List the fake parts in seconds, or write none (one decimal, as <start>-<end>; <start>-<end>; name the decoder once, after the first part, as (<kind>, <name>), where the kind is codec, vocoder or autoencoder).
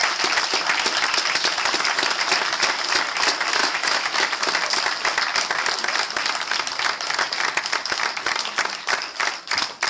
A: 3.6-4.2 (autoencoder, DAC-VAE)